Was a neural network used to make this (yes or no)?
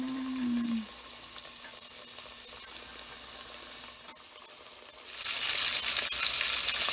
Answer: no